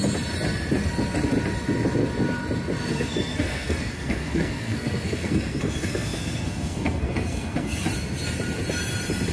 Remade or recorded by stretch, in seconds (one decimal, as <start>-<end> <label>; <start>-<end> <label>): 0.0-2.9 recorded; 2.9-7.8 remade; 7.8-9.3 recorded